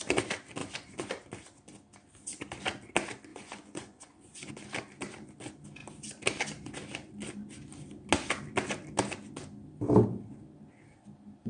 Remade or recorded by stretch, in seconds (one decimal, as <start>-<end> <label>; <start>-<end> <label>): 0.0-0.6 recorded; 0.6-1.1 remade; 1.1-3.3 recorded; 3.3-4.5 remade; 4.5-11.5 recorded